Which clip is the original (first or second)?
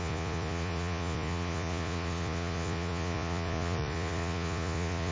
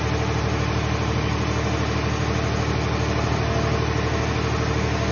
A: second